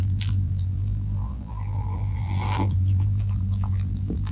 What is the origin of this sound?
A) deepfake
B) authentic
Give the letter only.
A